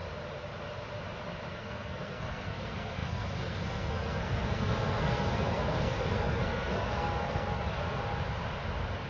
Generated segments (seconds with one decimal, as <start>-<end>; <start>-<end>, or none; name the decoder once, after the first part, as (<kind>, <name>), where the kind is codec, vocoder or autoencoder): 1.5-8.0 (codec, SNAC)